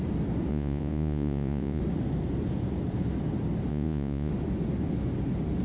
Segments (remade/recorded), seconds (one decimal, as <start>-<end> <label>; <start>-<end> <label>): 0.0-0.5 recorded; 0.5-1.8 remade; 1.8-3.7 recorded; 3.7-4.3 remade; 4.3-5.6 recorded